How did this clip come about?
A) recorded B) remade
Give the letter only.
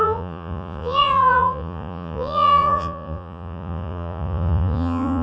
B